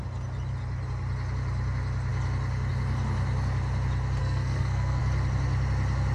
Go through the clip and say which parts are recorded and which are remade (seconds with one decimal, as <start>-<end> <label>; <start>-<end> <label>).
0.0-4.2 recorded; 4.2-5.0 remade; 5.0-6.1 recorded